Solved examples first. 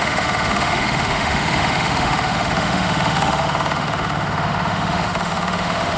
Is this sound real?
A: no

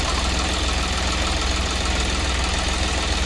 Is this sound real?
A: yes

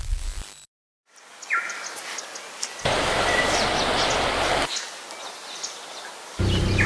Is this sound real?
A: yes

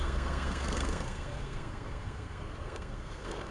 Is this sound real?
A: no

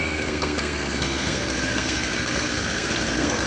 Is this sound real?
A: no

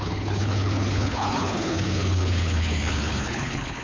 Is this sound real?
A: no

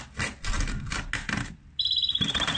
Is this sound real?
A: yes